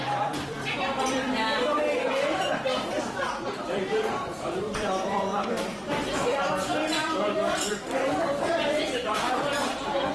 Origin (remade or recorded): remade